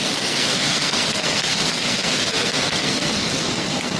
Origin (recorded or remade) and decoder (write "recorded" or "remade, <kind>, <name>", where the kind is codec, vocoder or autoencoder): remade, codec, SNAC